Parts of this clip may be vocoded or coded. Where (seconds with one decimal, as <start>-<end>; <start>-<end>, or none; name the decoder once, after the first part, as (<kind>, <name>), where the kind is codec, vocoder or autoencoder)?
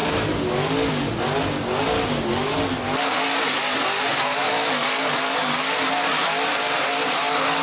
none